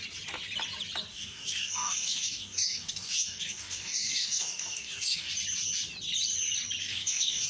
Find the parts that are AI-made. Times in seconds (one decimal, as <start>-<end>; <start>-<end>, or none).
1.1-5.3; 6.8-7.5